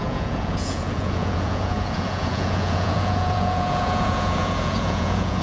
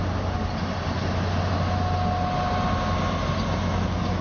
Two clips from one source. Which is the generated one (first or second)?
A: first